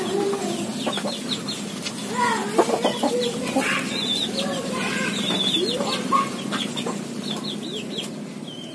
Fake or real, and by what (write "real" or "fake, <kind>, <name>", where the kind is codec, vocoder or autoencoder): real